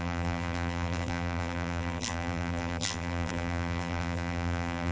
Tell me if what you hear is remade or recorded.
remade